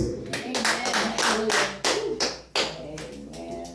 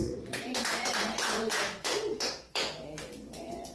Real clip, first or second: first